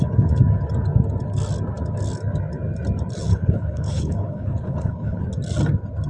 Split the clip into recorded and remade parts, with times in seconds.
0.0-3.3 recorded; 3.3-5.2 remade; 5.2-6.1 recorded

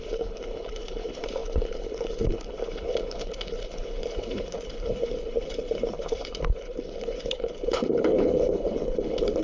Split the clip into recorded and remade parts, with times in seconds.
0.0-9.4 remade

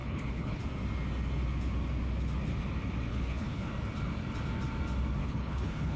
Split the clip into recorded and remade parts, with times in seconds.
0.0-0.6 remade; 0.6-3.1 recorded; 3.1-3.7 remade; 3.7-5.2 recorded; 5.2-6.0 remade

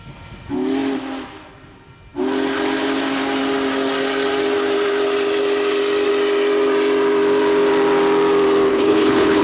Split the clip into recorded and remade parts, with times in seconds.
0.0-8.7 recorded; 8.7-9.4 remade